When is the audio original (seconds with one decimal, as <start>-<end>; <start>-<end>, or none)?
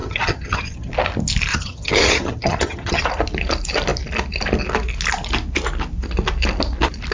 0.9-1.5; 3.0-7.1